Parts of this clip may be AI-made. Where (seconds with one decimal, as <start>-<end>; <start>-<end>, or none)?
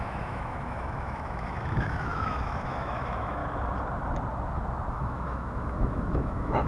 0.0-3.4; 4.9-6.7